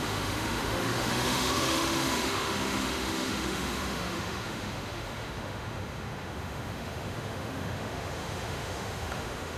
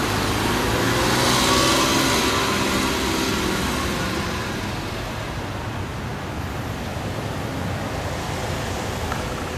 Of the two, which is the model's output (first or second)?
first